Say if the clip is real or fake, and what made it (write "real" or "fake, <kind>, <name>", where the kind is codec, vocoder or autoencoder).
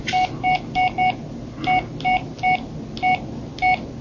real